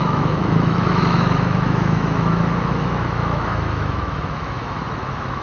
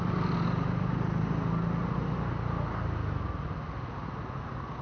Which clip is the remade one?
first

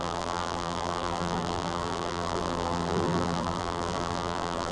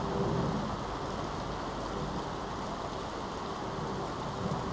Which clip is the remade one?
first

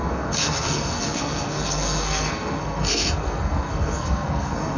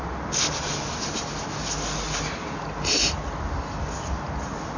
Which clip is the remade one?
first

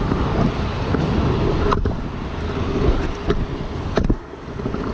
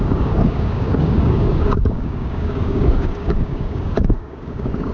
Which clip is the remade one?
second